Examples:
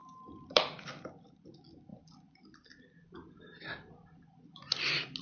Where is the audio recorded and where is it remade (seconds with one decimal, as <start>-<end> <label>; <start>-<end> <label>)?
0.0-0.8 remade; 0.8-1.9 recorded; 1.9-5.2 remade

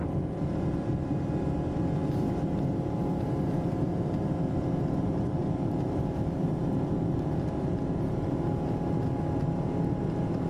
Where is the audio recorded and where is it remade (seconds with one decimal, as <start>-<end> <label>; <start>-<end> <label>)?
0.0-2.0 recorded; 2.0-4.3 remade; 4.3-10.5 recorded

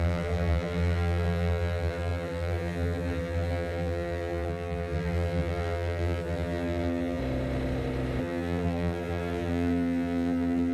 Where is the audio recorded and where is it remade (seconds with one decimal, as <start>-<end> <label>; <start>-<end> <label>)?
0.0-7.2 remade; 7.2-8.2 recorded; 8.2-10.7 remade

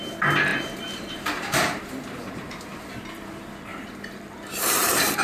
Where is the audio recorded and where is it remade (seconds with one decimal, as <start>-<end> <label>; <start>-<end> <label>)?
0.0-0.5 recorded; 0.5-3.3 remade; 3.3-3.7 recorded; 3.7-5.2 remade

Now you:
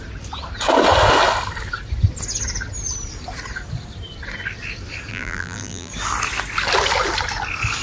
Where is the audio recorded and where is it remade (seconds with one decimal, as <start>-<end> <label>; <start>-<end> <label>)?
0.0-5.1 recorded; 5.1-5.9 remade; 5.9-7.8 recorded

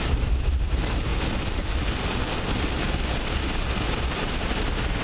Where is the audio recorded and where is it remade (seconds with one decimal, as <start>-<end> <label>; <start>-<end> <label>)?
0.0-1.1 remade; 1.1-4.1 recorded; 4.1-5.0 remade

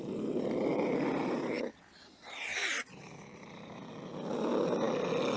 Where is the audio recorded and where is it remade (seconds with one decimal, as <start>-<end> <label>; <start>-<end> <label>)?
0.0-0.7 recorded; 0.7-3.9 remade; 3.9-5.4 recorded

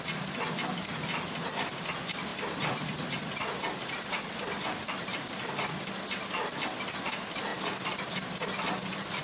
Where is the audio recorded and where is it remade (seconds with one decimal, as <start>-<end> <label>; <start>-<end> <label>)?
0.0-2.3 recorded; 2.3-5.5 remade; 5.5-7.5 recorded; 7.5-9.2 remade